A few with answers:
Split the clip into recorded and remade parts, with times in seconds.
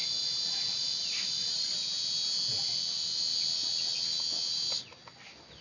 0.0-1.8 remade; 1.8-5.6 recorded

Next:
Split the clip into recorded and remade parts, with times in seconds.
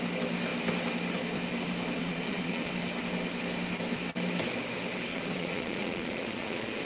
0.0-2.0 recorded; 2.0-2.7 remade; 2.7-5.1 recorded; 5.1-6.8 remade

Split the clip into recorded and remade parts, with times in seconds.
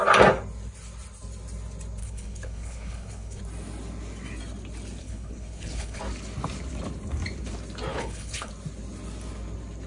0.0-2.0 recorded; 2.0-3.4 remade; 3.4-5.0 recorded; 5.0-6.0 remade; 6.0-7.9 recorded; 7.9-8.5 remade; 8.5-9.9 recorded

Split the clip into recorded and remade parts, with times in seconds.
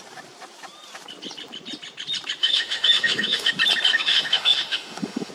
0.0-2.4 recorded; 2.4-3.5 remade; 3.5-3.9 recorded; 3.9-5.3 remade